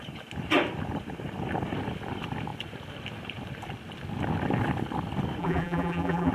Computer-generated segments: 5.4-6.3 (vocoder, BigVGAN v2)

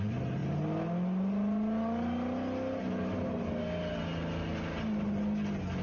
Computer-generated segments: none

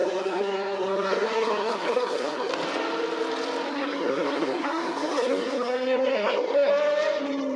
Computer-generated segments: 0.0-2.5 (codec, SNAC); 3.7-6.7

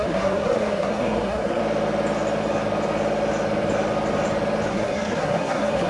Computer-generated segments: 0.0-1.6 (codec, SNAC); 4.7-5.9